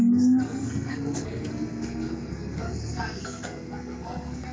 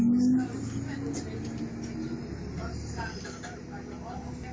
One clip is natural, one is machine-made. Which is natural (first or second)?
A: second